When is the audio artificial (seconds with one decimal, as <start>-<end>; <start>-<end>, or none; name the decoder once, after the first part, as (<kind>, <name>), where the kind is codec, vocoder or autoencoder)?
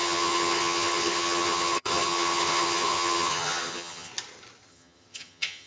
0.0-4.1 (vocoder, HiFi-GAN); 4.7-5.7